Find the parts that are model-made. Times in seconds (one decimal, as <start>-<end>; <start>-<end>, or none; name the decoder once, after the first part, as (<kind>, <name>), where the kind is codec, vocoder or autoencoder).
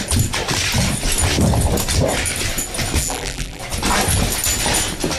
3.0-3.6 (vocoder, BigVGAN v2)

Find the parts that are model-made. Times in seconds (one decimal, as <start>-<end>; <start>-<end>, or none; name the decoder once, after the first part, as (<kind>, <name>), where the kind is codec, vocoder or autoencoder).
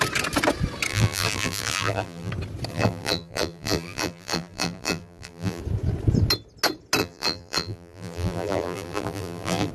0.9-2.3 (vocoder, BigVGAN v2); 2.7-5.6; 7.0-9.7